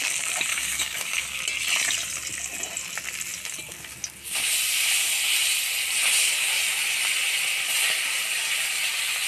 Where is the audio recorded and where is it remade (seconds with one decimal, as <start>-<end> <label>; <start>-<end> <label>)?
0.0-0.5 recorded; 0.5-1.4 remade; 1.4-9.3 recorded

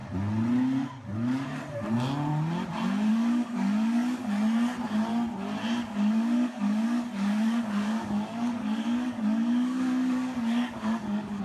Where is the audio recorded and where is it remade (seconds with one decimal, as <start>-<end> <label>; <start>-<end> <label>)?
0.0-3.1 recorded; 3.1-4.2 remade; 4.2-5.8 recorded; 5.8-11.4 remade

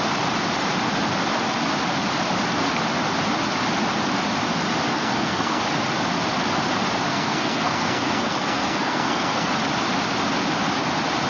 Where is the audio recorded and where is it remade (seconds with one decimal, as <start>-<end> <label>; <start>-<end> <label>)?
0.0-4.9 recorded; 4.9-5.6 remade; 5.6-7.1 recorded; 7.1-9.5 remade; 9.5-11.3 recorded

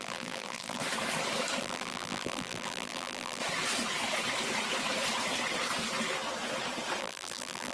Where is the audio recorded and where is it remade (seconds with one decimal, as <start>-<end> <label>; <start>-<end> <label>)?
0.0-0.8 remade; 0.8-1.6 recorded; 1.6-3.4 remade; 3.4-7.0 recorded; 7.0-7.7 remade

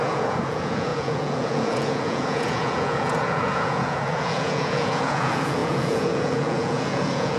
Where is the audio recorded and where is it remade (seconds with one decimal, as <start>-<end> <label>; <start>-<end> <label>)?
0.0-7.4 remade

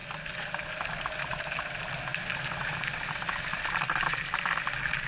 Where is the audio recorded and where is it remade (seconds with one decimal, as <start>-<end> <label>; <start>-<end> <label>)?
0.0-1.3 recorded; 1.3-4.4 remade; 4.4-5.1 recorded

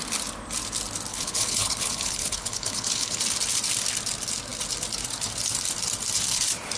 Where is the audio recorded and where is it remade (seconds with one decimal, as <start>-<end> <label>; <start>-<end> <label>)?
0.0-1.1 recorded; 1.1-3.2 remade; 3.2-6.8 recorded